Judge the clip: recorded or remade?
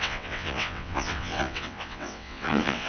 remade